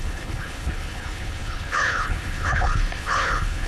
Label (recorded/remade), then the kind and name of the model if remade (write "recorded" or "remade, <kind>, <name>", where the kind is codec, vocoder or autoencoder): remade, codec, HILCodec